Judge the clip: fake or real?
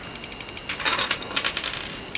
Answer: real